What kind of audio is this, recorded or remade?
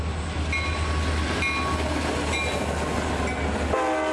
recorded